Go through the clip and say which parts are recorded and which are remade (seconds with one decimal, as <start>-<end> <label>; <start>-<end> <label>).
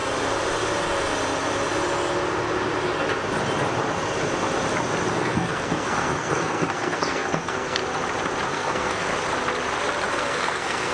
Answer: 0.0-5.1 recorded; 5.1-7.8 remade; 7.8-8.5 recorded; 8.5-9.1 remade; 9.1-10.1 recorded; 10.1-10.9 remade